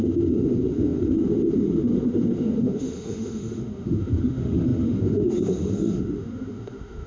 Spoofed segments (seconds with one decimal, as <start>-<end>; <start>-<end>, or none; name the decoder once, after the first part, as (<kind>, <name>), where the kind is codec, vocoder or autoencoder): 0.0-7.1 (autoencoder, DAC-VAE)